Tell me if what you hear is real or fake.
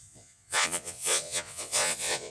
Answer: fake